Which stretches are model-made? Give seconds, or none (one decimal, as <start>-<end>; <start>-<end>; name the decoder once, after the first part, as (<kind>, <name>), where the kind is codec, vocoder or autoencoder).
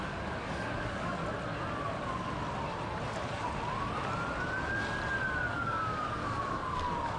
0.0-1.2 (codec, DAC); 5.5-7.2